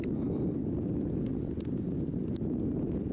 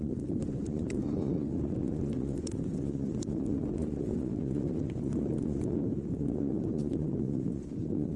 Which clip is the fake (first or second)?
second